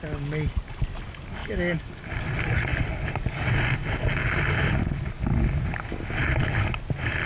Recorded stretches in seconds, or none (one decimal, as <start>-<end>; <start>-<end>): 0.0-1.4; 1.9-7.3